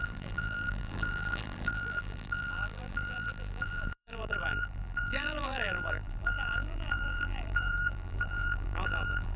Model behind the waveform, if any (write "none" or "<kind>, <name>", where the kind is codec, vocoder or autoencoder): vocoder, BigVGAN v2